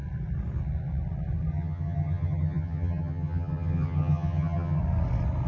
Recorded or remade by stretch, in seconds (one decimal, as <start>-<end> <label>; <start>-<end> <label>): 0.0-1.5 recorded; 1.5-4.8 remade; 4.8-5.5 recorded